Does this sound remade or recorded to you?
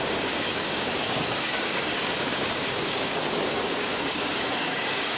remade